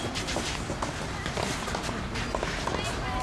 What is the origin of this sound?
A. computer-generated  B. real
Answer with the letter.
B